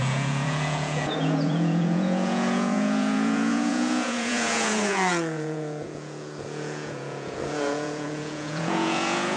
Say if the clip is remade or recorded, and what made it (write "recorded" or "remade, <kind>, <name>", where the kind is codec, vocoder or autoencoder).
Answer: remade, vocoder, Vocos